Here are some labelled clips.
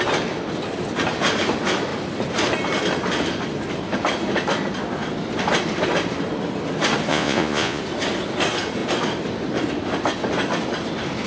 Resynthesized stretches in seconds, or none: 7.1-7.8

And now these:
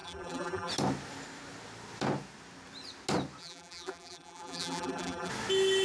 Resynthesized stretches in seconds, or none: 0.0-0.7; 3.4-5.3

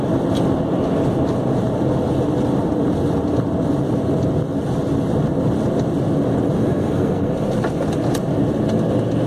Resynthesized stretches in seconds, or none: 6.6-7.3

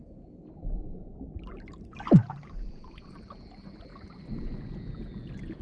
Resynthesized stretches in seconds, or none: none

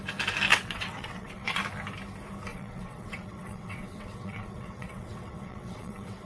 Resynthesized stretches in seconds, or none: 0.5-1.6; 2.5-6.3

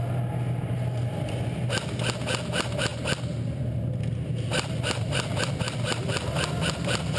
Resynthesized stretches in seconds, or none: 1.0-1.6

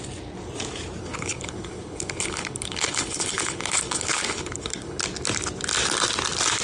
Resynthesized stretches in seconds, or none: 1.0-5.0

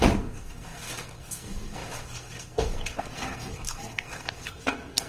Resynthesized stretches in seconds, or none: 0.0-5.1